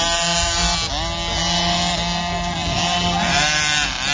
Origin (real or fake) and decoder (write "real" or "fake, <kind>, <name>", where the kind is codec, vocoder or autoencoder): real